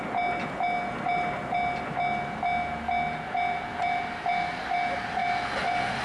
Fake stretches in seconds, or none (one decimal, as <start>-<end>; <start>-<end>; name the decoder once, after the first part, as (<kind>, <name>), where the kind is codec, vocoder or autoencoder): none